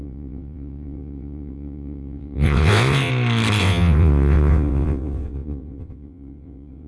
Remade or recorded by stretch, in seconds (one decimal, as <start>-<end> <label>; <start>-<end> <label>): 0.0-3.1 remade; 3.1-3.6 recorded; 3.6-6.9 remade